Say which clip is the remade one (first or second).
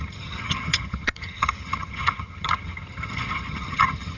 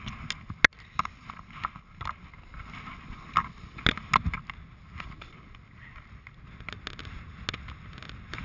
first